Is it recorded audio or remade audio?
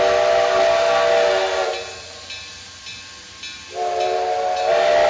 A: recorded